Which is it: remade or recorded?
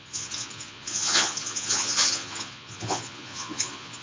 remade